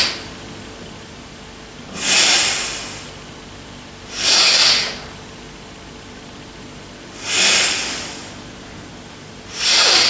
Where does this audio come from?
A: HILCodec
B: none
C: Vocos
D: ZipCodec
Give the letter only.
B